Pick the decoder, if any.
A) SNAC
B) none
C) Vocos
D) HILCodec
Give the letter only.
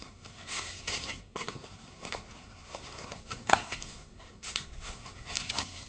A